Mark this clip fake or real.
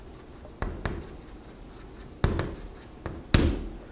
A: real